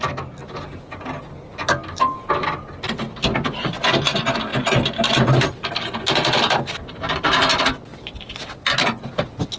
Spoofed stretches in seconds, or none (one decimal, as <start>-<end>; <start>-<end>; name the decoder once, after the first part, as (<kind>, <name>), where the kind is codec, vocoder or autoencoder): 0.4-1.2 (vocoder, BigVGAN v2); 4.5-7.1